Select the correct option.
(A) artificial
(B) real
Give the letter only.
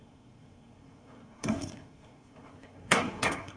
A